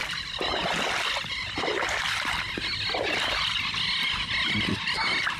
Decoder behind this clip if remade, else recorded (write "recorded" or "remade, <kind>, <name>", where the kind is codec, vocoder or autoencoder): recorded